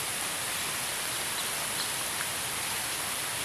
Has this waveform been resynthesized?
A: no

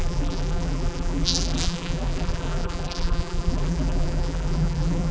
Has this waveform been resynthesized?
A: yes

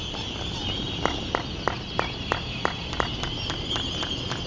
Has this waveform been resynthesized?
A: no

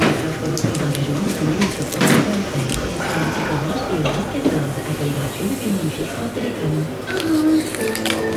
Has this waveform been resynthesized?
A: no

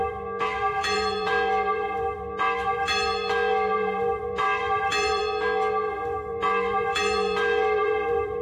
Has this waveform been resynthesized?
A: yes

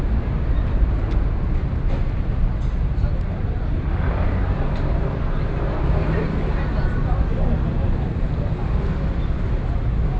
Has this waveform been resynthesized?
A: no